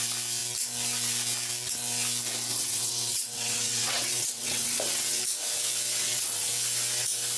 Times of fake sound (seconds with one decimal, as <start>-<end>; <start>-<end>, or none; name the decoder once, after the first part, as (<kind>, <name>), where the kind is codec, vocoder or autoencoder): 2.5-5.2 (vocoder, WaveNeXt); 6.0-6.5